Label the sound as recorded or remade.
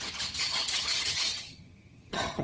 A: remade